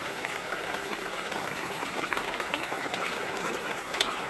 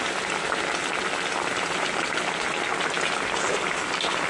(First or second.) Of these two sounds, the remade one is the first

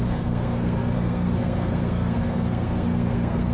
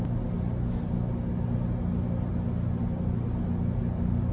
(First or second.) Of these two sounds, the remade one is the first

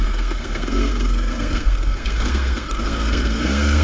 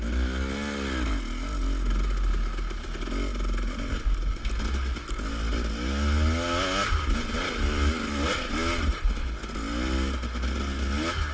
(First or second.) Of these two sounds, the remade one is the first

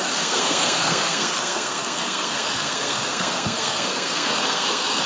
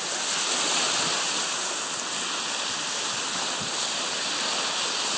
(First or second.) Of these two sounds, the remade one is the first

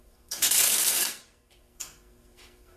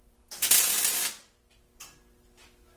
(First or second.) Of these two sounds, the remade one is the first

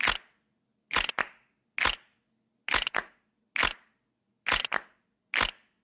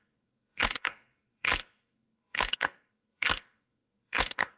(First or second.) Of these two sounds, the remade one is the second